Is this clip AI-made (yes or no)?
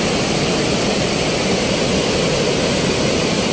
no